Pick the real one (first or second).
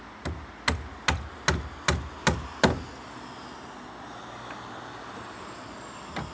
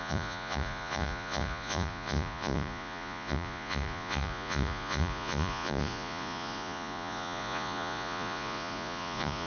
first